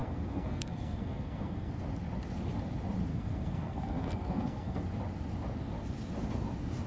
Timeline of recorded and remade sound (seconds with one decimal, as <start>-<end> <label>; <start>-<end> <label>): 0.0-1.7 remade; 1.7-3.1 recorded; 3.1-4.8 remade; 4.8-6.9 recorded